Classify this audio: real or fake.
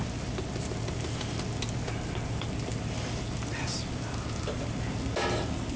real